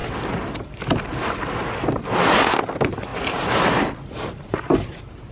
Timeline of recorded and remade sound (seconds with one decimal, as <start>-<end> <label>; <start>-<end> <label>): 0.0-1.7 remade; 1.7-3.1 recorded; 3.1-5.3 remade

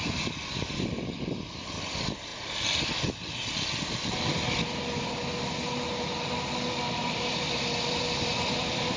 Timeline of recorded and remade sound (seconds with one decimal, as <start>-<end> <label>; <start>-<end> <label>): 0.0-2.3 remade; 2.3-6.4 recorded; 6.4-9.0 remade

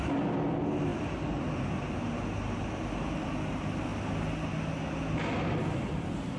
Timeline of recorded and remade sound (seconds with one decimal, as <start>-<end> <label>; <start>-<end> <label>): 0.0-6.4 recorded

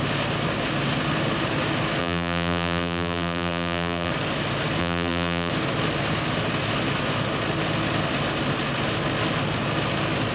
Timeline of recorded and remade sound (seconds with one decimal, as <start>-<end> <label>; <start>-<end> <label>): 0.0-2.0 recorded; 2.0-4.1 remade; 4.1-4.8 recorded; 4.8-5.5 remade; 5.5-10.3 recorded

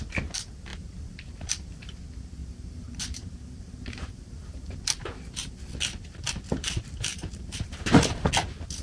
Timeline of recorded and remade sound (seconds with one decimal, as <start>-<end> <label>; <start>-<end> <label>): 0.0-2.4 recorded; 2.4-4.8 remade; 4.8-7.1 recorded; 7.1-8.3 remade; 8.3-8.8 recorded

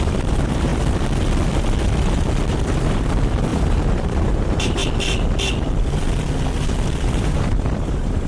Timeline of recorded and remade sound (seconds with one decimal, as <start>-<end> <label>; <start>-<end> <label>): 0.0-0.7 remade; 0.7-2.5 recorded; 2.5-4.8 remade; 4.8-7.0 recorded; 7.0-8.3 remade

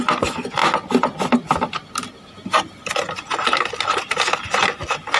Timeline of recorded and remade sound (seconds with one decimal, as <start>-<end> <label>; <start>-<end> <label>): 0.0-0.6 remade; 0.6-3.1 recorded; 3.1-5.2 remade